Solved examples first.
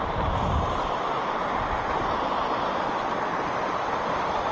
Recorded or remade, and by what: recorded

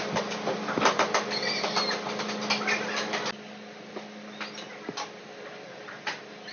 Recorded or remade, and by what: recorded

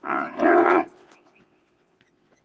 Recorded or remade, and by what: remade, vocoder, WaveNeXt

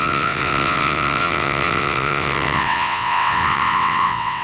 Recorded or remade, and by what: remade, vocoder, WaveNeXt